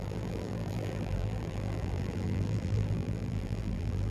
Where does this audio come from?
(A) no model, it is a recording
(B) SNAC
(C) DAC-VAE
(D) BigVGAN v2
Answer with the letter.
D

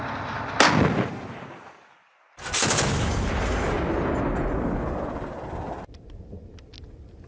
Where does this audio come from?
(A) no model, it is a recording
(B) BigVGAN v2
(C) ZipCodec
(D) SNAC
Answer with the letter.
A